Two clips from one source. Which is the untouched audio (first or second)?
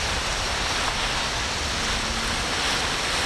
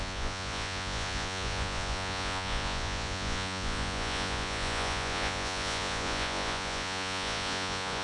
first